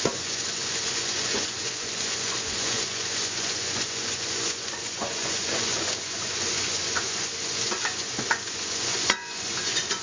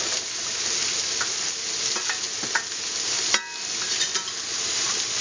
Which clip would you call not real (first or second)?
first